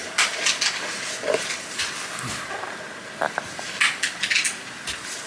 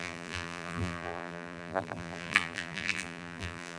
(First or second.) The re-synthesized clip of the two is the second